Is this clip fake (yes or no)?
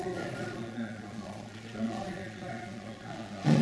yes